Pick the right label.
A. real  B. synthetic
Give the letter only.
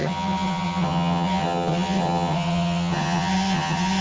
B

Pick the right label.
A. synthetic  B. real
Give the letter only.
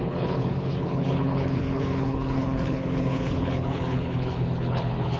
A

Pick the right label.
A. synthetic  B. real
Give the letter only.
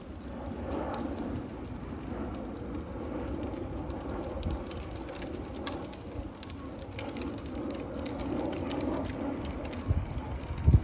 B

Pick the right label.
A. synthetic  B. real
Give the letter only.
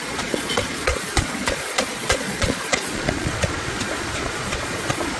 A